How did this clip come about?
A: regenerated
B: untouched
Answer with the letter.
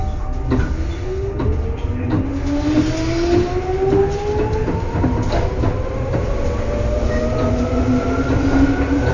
B